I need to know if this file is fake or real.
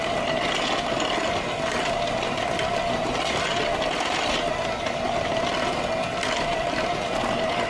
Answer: real